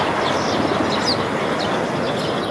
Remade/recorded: recorded